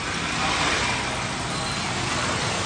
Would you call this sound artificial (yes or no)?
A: no